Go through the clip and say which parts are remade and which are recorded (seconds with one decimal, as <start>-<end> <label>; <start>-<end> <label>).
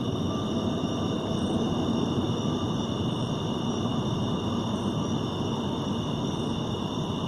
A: 0.0-2.6 recorded; 2.6-4.4 remade; 4.4-7.3 recorded